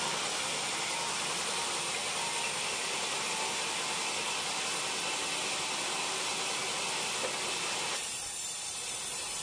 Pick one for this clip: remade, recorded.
recorded